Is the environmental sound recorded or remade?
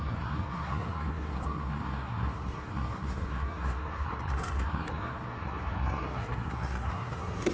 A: remade